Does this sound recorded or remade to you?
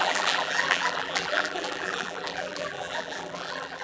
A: remade